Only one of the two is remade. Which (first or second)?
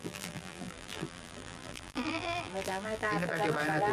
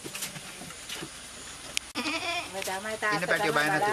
first